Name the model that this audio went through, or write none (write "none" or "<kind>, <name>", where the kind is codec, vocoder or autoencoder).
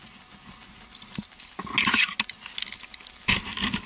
none